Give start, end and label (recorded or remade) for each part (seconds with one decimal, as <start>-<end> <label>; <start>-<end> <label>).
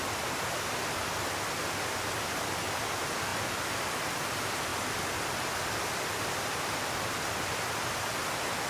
0.0-8.7 recorded